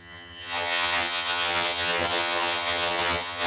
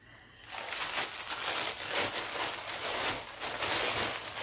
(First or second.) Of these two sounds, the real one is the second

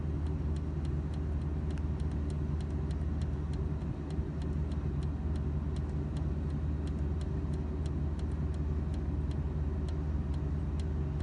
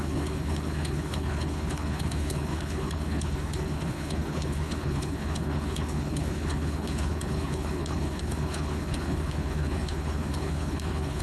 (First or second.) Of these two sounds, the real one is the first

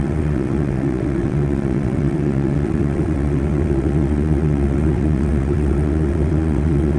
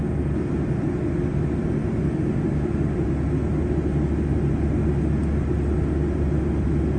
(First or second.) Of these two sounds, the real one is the second